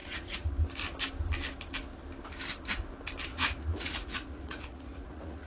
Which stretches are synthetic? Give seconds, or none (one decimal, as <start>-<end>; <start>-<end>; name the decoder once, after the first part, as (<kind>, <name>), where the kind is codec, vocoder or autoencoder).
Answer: 0.0-0.5 (vocoder, Vocos); 3.3-5.5